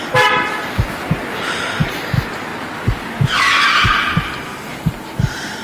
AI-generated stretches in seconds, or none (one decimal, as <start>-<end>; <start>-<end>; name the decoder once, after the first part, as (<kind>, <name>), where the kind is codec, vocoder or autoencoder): 2.5-5.6 (vocoder, BigVGAN v2)